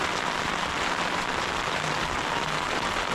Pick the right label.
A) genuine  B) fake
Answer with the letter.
A